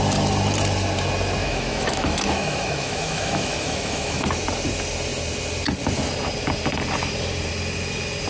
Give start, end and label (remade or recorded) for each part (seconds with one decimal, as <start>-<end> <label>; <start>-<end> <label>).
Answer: 0.0-1.4 recorded; 1.4-4.2 remade; 4.2-8.3 recorded